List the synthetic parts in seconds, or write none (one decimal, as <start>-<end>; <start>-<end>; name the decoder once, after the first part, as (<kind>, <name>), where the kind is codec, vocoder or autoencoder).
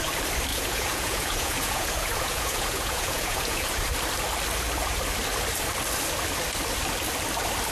0.5-3.7 (vocoder, Vocos)